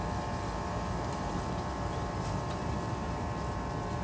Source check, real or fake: fake